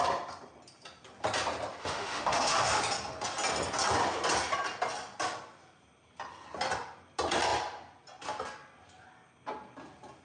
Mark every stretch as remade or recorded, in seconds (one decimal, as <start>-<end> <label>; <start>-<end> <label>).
0.0-1.8 recorded; 1.8-2.8 remade; 2.8-10.2 recorded